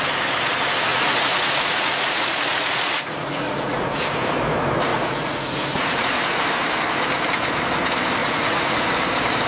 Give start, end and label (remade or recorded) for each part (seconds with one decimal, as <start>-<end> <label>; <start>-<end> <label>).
0.0-0.9 recorded; 0.9-3.9 remade; 3.9-4.9 recorded; 4.9-6.1 remade; 6.1-8.2 recorded; 8.2-8.8 remade; 8.8-9.5 recorded